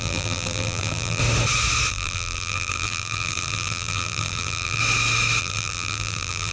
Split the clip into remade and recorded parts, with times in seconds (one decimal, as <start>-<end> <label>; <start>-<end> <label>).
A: 0.0-1.2 remade; 1.2-1.9 recorded; 1.9-4.8 remade; 4.8-5.4 recorded; 5.4-6.5 remade

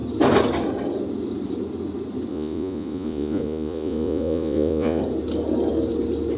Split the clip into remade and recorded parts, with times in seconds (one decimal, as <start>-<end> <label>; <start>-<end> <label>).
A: 0.0-2.3 recorded; 2.3-5.0 remade; 5.0-6.4 recorded

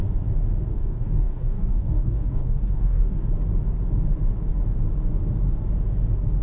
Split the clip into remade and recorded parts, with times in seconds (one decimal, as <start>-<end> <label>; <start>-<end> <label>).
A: 0.0-0.7 recorded; 0.7-3.3 remade; 3.3-6.4 recorded

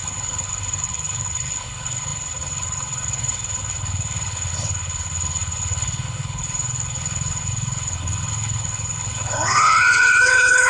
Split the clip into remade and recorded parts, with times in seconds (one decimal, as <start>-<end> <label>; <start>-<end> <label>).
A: 0.0-10.7 remade